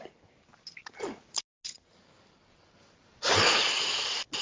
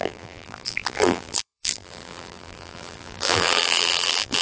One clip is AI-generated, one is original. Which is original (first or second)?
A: first